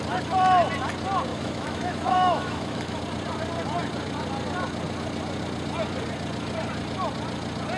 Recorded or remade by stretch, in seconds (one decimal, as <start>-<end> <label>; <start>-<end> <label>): 0.0-1.3 recorded; 1.3-3.0 remade; 3.0-7.8 recorded